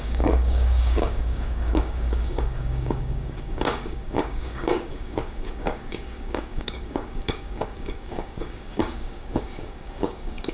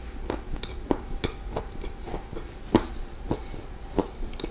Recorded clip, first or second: second